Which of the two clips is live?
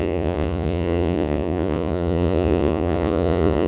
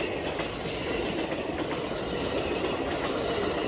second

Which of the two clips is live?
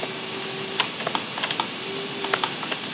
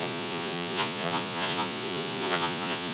first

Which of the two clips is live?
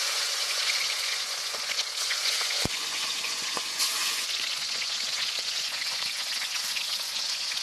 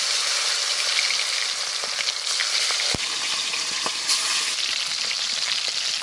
second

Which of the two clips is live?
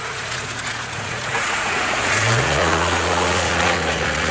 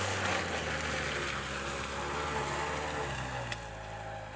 second